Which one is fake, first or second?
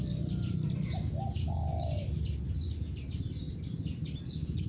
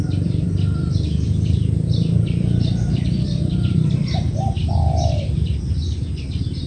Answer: second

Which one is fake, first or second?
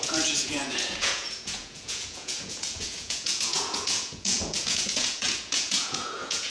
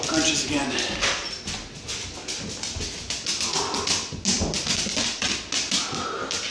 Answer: first